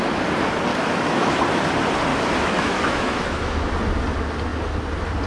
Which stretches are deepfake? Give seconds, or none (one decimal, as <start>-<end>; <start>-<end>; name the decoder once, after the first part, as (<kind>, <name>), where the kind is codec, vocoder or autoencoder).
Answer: 0.7-1.4 (autoencoder, DAC-VAE); 2.1-3.7